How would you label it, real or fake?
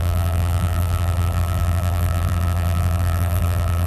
fake